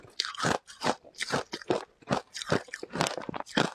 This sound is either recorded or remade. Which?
recorded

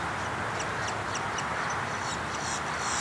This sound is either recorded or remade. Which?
recorded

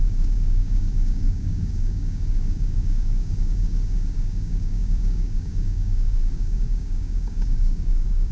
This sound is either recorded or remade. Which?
remade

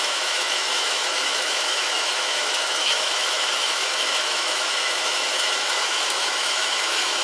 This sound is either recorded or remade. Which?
remade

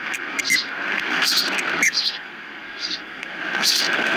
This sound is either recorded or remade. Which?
remade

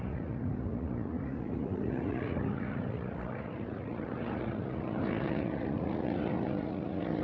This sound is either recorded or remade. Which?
remade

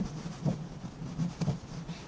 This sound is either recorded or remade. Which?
recorded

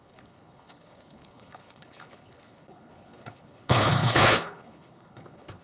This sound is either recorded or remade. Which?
remade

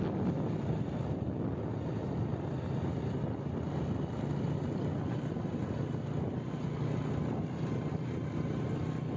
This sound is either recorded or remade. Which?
recorded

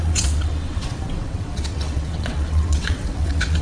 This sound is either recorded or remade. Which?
remade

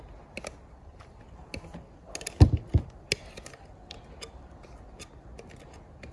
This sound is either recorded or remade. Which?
recorded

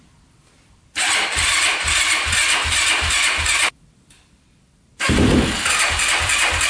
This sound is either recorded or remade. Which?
remade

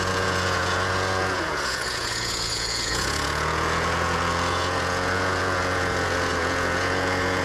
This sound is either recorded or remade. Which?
remade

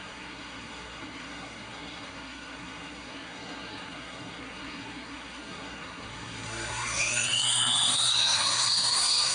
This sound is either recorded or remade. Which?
remade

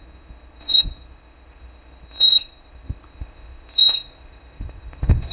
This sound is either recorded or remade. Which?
remade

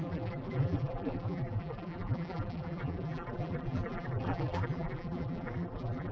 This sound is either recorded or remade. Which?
remade